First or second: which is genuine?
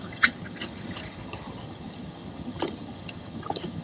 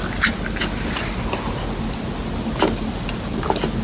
second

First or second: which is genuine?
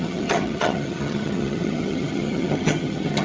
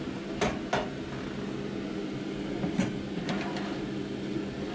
second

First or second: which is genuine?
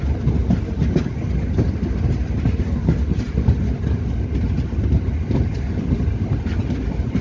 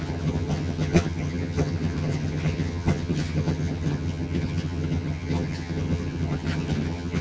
first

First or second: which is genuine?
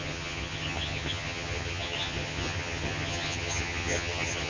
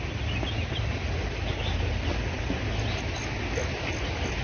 second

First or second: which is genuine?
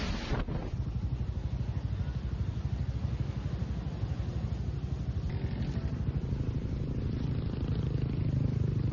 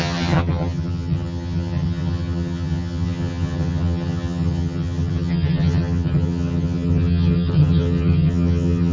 first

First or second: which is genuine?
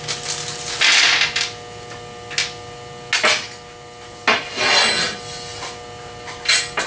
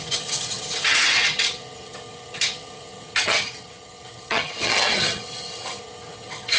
first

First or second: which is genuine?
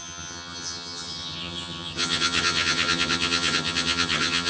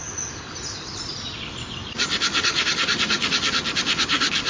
second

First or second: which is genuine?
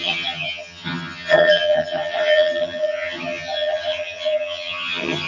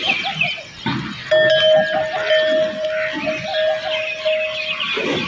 second